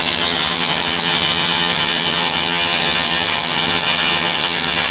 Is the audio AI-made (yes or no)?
yes